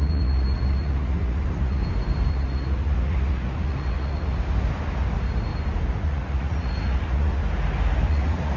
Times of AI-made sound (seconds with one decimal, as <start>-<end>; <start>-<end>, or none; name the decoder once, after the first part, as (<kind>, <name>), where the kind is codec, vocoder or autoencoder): 0.0-1.8 (vocoder, Vocos); 2.3-4.3; 5.9-7.4; 8.1-8.6